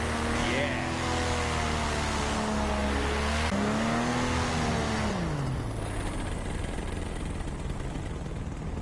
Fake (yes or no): no